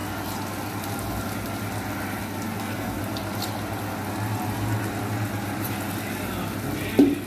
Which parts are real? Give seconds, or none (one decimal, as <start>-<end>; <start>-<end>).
0.0-2.6; 3.0-7.3